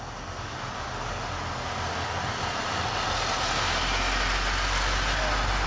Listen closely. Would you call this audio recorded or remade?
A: recorded